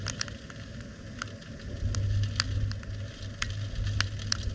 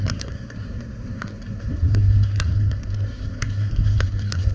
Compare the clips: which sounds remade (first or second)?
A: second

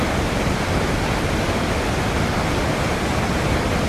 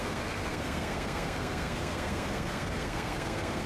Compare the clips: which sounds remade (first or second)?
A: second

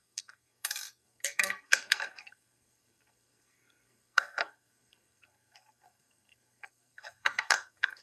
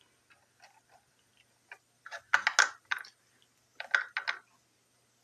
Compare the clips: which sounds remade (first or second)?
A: first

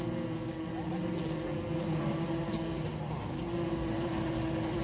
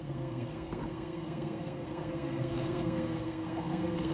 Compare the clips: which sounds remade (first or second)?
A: second